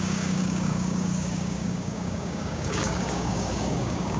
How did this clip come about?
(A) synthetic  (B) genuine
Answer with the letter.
A